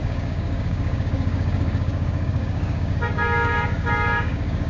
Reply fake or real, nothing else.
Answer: fake